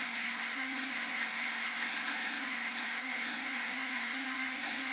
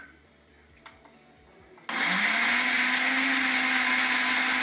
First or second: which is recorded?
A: second